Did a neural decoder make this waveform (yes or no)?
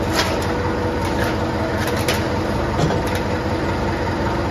no